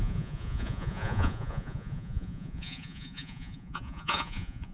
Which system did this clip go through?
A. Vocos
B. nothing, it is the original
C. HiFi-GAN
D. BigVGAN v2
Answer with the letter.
A